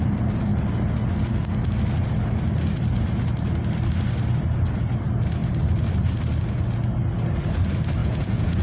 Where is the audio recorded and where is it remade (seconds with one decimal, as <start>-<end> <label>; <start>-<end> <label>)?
0.0-8.0 recorded; 8.0-8.6 remade